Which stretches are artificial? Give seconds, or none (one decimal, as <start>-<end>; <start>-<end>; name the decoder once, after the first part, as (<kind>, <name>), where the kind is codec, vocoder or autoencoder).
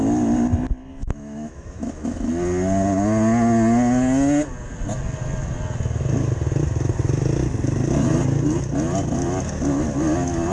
0.9-2.3 (autoencoder, DAC-VAE)